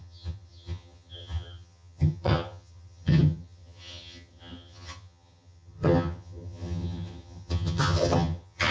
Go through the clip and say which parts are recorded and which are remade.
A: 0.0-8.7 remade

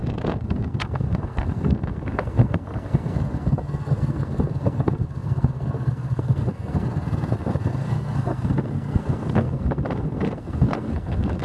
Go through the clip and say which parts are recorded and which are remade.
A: 0.0-11.4 remade

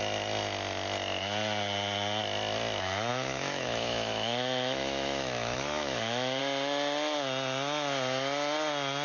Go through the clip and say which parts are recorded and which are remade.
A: 0.0-3.1 recorded; 3.1-6.4 remade; 6.4-9.0 recorded

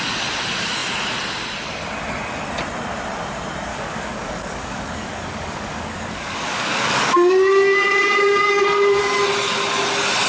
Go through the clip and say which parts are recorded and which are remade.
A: 0.0-3.7 recorded; 3.7-9.0 remade; 9.0-10.3 recorded

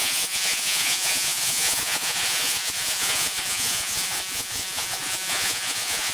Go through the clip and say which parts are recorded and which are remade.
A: 0.0-6.1 remade

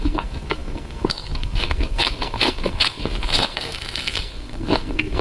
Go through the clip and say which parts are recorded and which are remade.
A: 0.0-5.2 remade

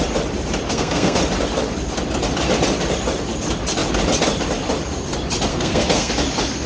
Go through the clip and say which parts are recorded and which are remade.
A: 0.0-0.7 recorded; 0.7-1.2 remade; 1.2-5.5 recorded; 5.5-6.1 remade; 6.1-6.7 recorded